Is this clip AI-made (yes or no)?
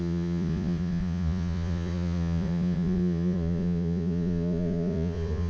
yes